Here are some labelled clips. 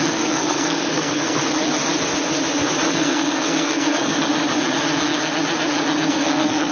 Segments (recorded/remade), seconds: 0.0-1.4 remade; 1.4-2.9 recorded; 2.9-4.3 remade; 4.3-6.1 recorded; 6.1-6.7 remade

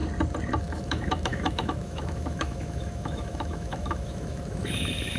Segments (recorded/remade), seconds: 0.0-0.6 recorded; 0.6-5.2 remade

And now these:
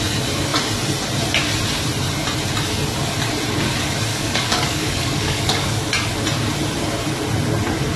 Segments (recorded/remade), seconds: 0.0-4.1 recorded; 4.1-5.8 remade; 5.8-8.0 recorded

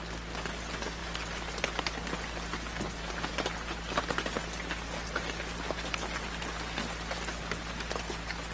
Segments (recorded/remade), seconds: 0.0-8.5 recorded

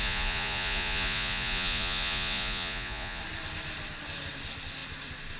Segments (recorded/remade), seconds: 0.0-3.2 remade; 3.2-5.4 recorded